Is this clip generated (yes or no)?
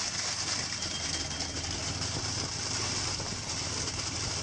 no